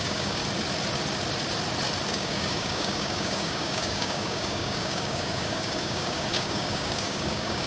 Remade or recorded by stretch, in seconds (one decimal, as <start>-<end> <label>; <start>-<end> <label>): 0.0-0.4 remade; 0.4-2.1 recorded; 2.1-7.7 remade